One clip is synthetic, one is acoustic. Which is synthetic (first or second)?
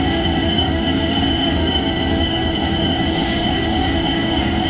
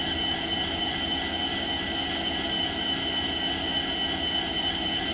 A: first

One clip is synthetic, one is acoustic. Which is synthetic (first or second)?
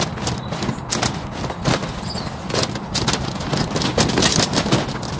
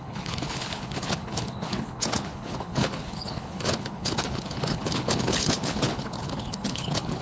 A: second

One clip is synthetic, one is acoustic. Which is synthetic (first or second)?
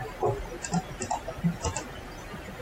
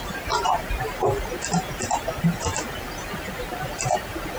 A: second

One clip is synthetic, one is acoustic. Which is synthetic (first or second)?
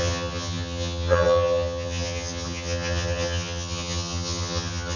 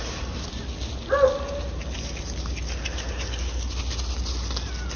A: first